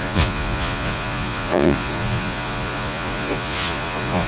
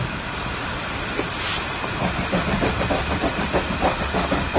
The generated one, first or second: first